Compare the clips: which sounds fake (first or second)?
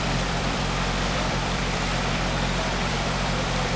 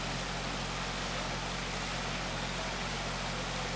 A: first